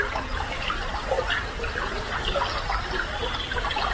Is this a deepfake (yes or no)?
no